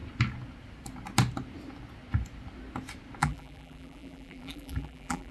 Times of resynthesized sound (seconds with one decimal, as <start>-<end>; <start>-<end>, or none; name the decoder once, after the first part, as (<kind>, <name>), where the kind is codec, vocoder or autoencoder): 3.2-5.3 (vocoder, BigVGAN v2)